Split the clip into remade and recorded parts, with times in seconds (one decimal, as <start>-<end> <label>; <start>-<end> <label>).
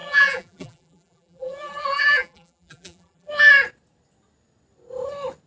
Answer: 0.0-3.3 remade; 3.3-5.5 recorded